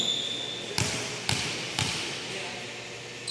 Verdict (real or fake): real